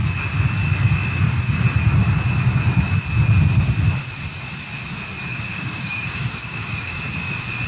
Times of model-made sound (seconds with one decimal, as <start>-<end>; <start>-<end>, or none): 5.3-7.0